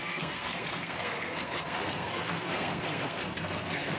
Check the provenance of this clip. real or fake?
fake